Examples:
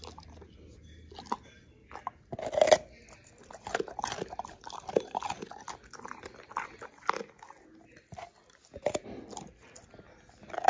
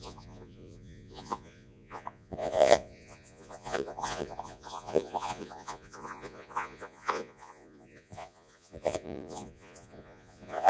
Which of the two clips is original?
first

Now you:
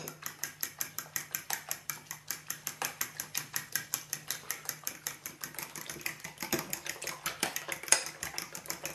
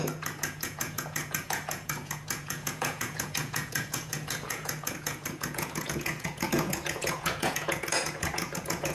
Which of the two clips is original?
first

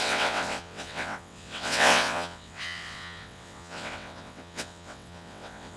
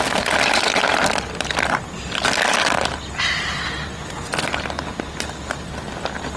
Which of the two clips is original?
second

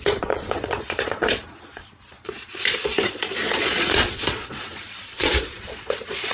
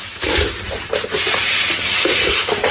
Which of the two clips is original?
second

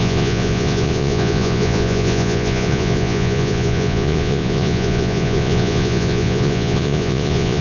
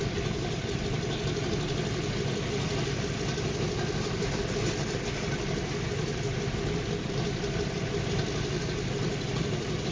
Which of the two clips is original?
second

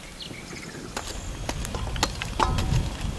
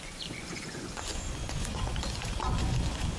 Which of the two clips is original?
first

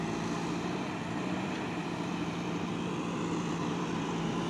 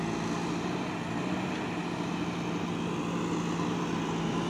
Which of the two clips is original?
second